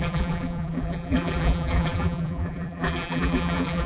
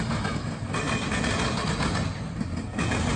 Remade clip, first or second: first